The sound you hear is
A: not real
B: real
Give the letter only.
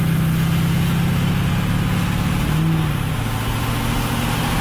B